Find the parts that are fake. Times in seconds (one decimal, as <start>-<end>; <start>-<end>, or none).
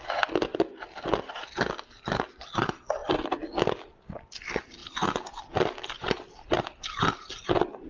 3.0-3.7; 4.8-6.5